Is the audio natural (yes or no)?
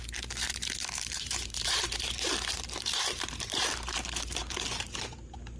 no